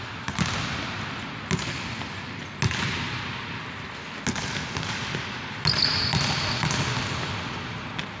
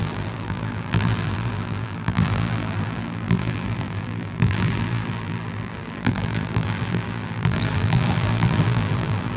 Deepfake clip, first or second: second